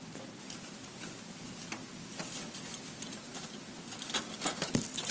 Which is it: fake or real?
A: real